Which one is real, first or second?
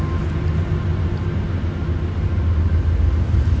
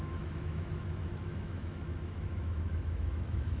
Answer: first